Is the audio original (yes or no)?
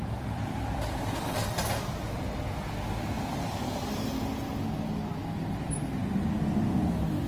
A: yes